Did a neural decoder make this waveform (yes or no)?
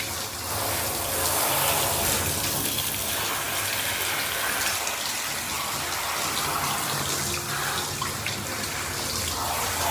no